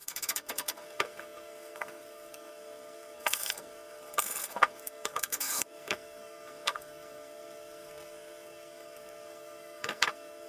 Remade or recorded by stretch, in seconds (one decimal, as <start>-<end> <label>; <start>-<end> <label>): 0.0-10.5 remade

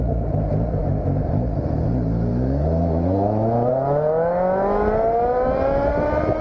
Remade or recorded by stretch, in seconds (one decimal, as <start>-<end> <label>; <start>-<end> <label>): 0.0-0.8 recorded; 0.8-1.7 remade; 1.7-2.3 recorded; 2.3-3.7 remade; 3.7-6.4 recorded

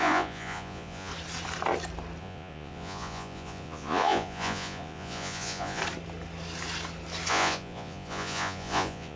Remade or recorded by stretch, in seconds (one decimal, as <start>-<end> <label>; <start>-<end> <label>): 0.0-1.1 remade; 1.1-2.2 recorded; 2.2-5.8 remade; 5.8-7.3 recorded; 7.3-9.2 remade

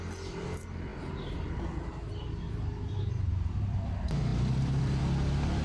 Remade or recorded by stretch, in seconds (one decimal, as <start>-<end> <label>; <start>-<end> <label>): 0.0-4.3 recorded; 4.3-5.0 remade; 5.0-5.6 recorded

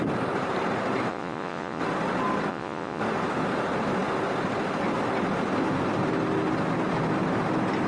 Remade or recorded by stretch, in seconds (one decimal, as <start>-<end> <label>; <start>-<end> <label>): 0.0-1.1 recorded; 1.1-1.8 remade; 1.8-2.5 recorded; 2.5-3.0 remade; 3.0-7.9 recorded

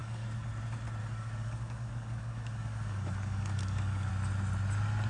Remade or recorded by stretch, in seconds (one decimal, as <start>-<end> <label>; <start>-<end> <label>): 0.0-0.5 remade; 0.5-1.0 recorded; 1.0-4.1 remade; 4.1-5.1 recorded